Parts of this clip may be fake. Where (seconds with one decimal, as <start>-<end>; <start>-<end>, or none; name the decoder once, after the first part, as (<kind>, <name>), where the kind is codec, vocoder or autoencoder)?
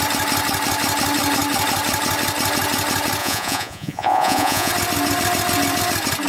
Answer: 3.2-4.7 (vocoder, Vocos)